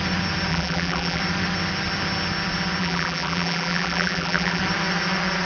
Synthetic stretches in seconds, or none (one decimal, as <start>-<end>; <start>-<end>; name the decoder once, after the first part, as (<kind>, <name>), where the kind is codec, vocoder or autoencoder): 0.5-1.2 (vocoder, BigVGAN v2); 2.8-4.6